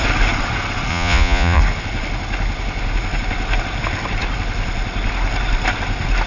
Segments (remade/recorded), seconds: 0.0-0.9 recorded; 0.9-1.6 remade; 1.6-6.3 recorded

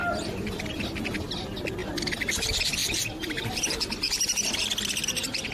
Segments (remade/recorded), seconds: 0.0-0.8 remade; 0.8-1.8 recorded; 1.8-2.3 remade; 2.3-2.8 recorded; 2.8-3.9 remade; 3.9-5.5 recorded

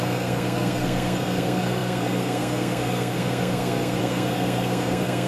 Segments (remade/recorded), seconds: 0.0-5.3 remade

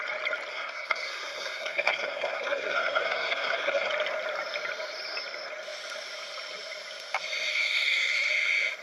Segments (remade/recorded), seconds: 0.0-0.5 recorded; 0.5-3.9 remade; 3.9-7.5 recorded; 7.5-8.3 remade; 8.3-8.8 recorded

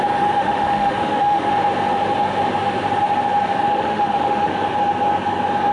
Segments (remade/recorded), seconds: 0.0-0.4 recorded; 0.4-1.5 remade; 1.5-3.7 recorded; 3.7-4.5 remade; 4.5-5.7 recorded

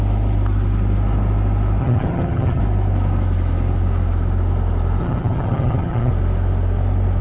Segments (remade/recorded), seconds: 0.0-1.8 recorded; 1.8-2.6 remade; 2.6-5.0 recorded; 5.0-6.1 remade; 6.1-7.2 recorded

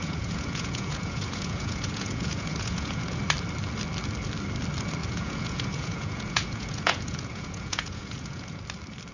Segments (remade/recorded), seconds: 0.0-3.2 remade; 3.2-5.0 recorded; 5.0-8.6 remade; 8.6-9.1 recorded